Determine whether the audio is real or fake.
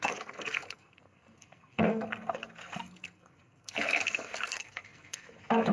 fake